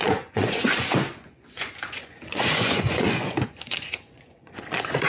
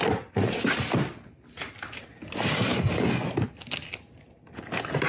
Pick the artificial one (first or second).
first